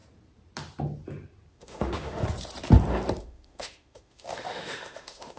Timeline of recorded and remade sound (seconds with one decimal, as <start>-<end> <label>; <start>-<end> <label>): 0.0-1.5 recorded; 1.5-2.2 remade; 2.2-3.2 recorded; 3.2-5.4 remade